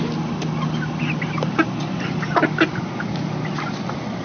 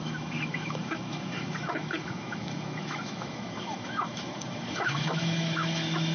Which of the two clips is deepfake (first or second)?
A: second